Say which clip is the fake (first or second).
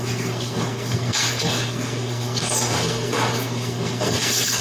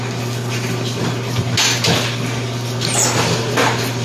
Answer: first